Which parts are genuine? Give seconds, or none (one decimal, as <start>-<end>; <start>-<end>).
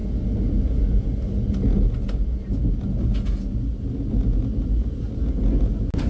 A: 0.0-6.1